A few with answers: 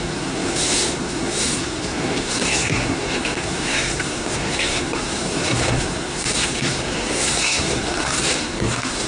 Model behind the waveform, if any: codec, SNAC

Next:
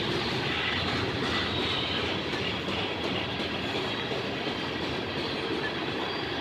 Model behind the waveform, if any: none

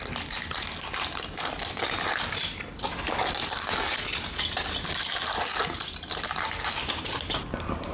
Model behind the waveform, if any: none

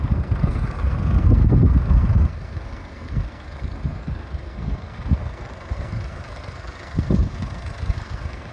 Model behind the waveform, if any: codec, SNAC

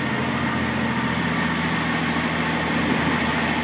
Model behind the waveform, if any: none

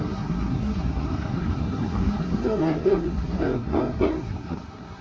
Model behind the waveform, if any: codec, SNAC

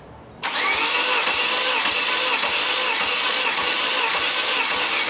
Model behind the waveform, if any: none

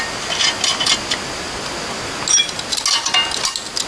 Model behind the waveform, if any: none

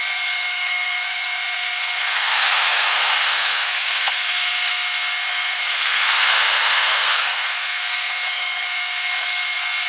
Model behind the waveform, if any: codec, SNAC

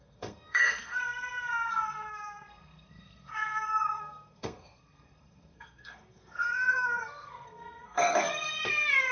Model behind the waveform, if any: codec, SNAC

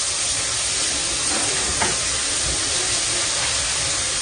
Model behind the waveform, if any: none